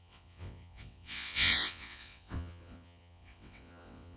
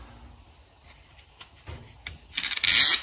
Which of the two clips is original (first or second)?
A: second